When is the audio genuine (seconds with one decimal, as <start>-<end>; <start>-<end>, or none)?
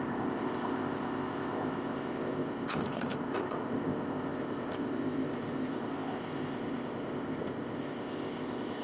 none